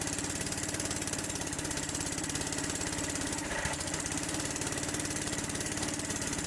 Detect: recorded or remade remade